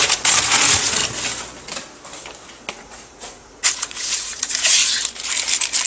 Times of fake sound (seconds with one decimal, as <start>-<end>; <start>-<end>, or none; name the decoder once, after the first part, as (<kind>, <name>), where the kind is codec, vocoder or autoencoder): 0.0-1.0 (vocoder, Vocos); 2.7-4.8